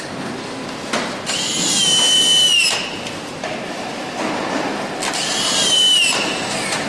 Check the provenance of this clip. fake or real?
real